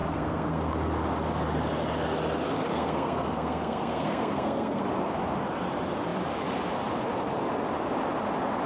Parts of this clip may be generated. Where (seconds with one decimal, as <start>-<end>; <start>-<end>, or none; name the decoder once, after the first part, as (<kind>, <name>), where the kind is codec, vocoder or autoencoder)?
0.0-0.7 (codec, SNAC); 2.7-4.8